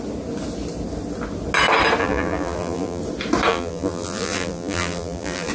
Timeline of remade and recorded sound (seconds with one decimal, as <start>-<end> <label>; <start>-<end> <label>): 0.0-2.0 recorded; 2.0-3.0 remade; 3.0-3.5 recorded; 3.5-5.5 remade